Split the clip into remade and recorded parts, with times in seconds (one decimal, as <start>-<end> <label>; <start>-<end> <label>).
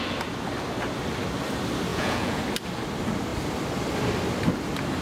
0.0-1.9 recorded; 1.9-2.4 remade; 2.4-5.0 recorded